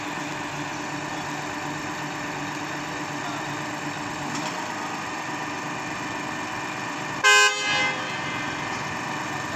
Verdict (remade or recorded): recorded